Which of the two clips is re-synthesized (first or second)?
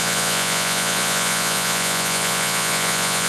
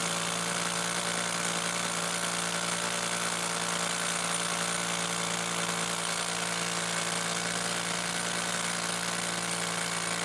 first